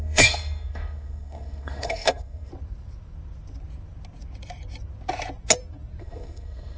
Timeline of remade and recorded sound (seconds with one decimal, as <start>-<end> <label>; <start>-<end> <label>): 0.0-2.5 remade; 2.5-6.0 recorded; 6.0-6.8 remade